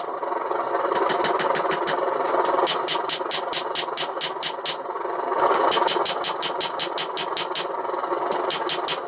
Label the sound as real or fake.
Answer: real